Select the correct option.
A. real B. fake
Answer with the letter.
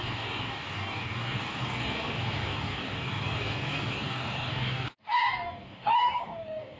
B